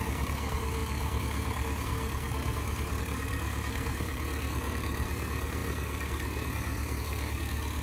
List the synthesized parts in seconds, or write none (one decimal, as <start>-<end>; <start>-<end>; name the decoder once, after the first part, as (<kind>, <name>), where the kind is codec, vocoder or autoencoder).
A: 0.0-7.8 (codec, SNAC)